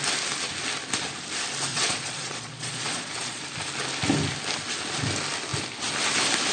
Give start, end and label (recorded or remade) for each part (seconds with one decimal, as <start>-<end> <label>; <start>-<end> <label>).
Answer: 0.0-1.7 recorded; 1.7-3.4 remade; 3.4-6.5 recorded